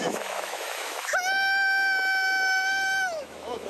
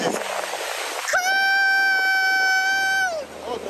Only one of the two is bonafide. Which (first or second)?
second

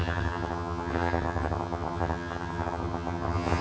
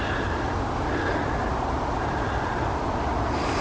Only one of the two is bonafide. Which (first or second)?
second